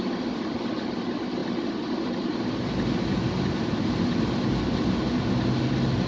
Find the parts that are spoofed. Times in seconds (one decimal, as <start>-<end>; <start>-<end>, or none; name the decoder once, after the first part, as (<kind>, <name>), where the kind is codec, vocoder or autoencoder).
none